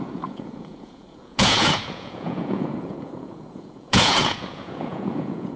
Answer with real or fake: fake